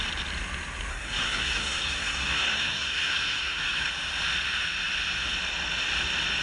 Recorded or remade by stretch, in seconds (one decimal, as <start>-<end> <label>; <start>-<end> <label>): 0.0-0.9 recorded; 0.9-3.9 remade; 3.9-6.4 recorded